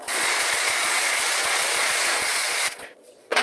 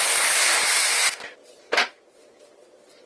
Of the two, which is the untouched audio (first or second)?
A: second